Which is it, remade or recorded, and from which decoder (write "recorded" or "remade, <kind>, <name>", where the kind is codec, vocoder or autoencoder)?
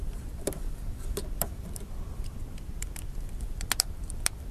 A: remade, vocoder, BigVGAN v2